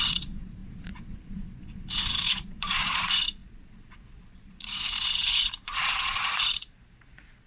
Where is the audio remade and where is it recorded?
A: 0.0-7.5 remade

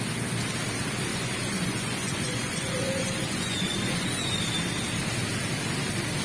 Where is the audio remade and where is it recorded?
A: 0.0-1.1 recorded; 1.1-4.4 remade; 4.4-6.2 recorded

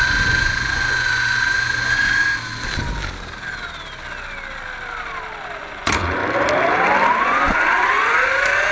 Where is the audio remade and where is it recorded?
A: 0.0-2.3 remade; 2.3-5.6 recorded; 5.6-6.2 remade; 6.2-7.2 recorded; 7.2-8.7 remade

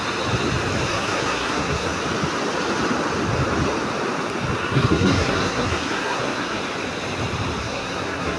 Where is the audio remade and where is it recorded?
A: 0.0-0.9 recorded; 0.9-2.0 remade; 2.0-4.6 recorded; 4.6-6.6 remade; 6.6-7.6 recorded; 7.6-8.4 remade

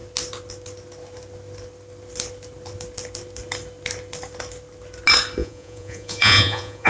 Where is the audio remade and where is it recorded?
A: 0.0-5.4 recorded; 5.4-6.9 remade

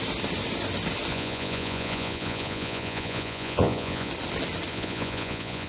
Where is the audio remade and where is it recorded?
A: 0.0-1.1 recorded; 1.1-4.1 remade; 4.1-4.7 recorded; 4.7-5.7 remade

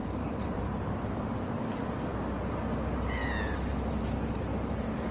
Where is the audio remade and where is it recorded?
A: 0.0-0.6 remade; 0.6-5.1 recorded

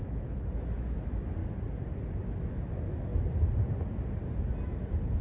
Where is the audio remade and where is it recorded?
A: 0.0-1.4 remade; 1.4-2.5 recorded; 2.5-3.1 remade; 3.1-5.2 recorded